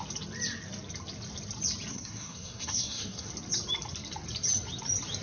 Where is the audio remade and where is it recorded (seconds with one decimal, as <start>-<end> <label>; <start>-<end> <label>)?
0.0-1.9 recorded; 1.9-3.3 remade; 3.3-5.2 recorded